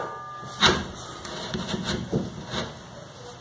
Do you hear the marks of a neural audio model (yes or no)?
no